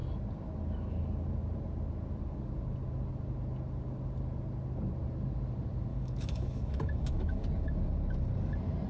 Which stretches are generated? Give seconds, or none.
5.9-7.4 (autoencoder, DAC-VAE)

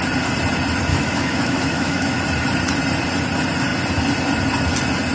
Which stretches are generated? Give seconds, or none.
0.9-2.2 (autoencoder, DAC-VAE)

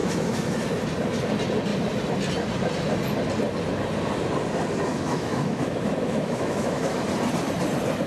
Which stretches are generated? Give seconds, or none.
0.0-0.6 (autoencoder, DAC-VAE); 4.9-7.0

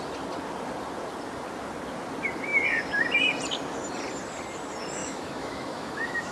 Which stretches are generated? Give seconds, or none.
5.0-6.3 (autoencoder, DAC-VAE)

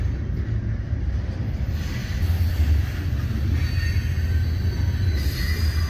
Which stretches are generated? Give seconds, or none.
none